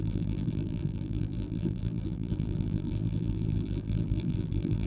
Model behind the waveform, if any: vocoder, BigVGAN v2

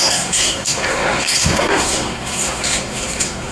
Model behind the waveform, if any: codec, SNAC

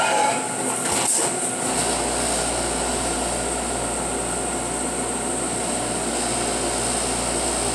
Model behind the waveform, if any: none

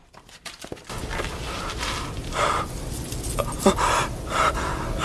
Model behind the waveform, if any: none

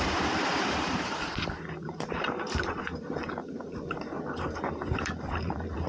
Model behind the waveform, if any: vocoder, BigVGAN v2